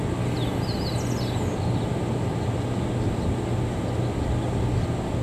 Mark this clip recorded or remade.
recorded